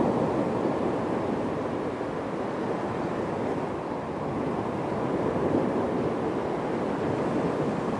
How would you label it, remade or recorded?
recorded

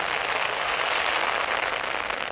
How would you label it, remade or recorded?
recorded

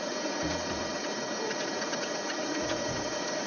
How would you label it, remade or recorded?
remade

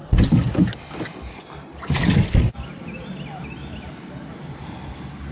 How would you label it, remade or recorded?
recorded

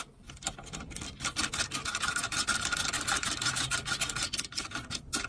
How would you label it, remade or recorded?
recorded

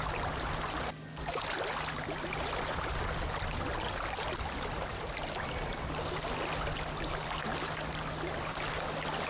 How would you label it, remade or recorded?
recorded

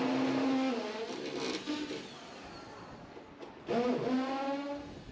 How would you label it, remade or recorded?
recorded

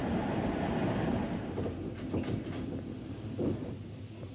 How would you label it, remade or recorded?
recorded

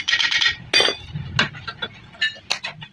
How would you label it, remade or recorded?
recorded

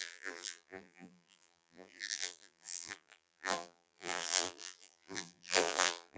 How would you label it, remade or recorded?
remade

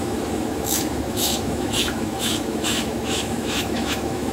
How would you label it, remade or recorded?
remade